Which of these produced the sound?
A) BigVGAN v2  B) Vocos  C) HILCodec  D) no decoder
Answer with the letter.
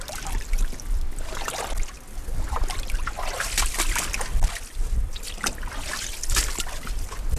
D